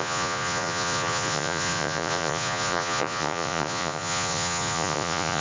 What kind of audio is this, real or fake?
fake